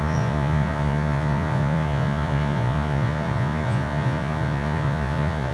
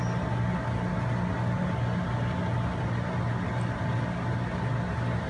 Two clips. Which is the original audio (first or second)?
second